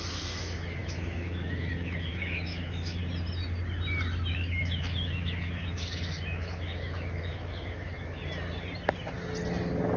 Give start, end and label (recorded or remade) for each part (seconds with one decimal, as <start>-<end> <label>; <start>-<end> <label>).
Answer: 0.0-3.0 remade; 3.0-4.3 recorded; 4.3-8.2 remade; 8.2-10.0 recorded